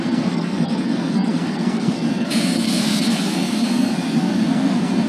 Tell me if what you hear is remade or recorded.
remade